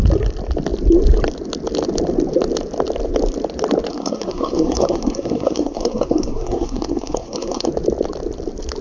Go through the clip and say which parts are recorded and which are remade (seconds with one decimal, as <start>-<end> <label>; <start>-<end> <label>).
0.0-3.9 recorded; 3.9-7.7 remade; 7.7-8.8 recorded